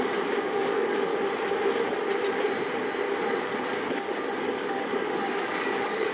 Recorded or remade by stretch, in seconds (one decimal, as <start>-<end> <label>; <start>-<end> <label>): 0.0-1.1 remade; 1.1-4.4 recorded; 4.4-6.1 remade